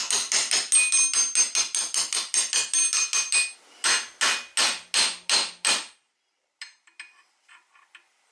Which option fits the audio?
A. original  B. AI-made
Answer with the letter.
A